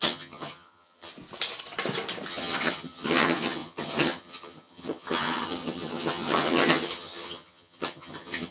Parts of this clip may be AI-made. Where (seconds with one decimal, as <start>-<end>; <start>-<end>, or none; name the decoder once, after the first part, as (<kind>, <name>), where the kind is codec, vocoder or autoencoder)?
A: 0.0-1.1 (vocoder, HiFi-GAN); 2.3-8.5

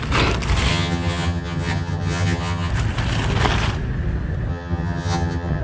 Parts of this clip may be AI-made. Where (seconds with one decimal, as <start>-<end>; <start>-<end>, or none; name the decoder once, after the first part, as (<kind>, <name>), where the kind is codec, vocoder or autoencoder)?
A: 0.7-2.7 (vocoder, HiFi-GAN); 4.5-5.6